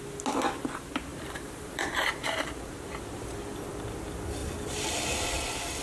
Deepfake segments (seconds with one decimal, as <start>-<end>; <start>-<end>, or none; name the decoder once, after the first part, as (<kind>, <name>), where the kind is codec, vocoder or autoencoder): 1.1-2.9 (vocoder, BigVGAN v2); 4.4-4.9